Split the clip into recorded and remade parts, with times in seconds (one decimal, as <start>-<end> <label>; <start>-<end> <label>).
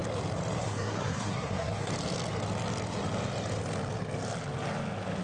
0.0-0.6 recorded; 0.6-1.9 remade; 1.9-5.2 recorded